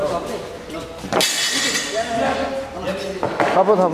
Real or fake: real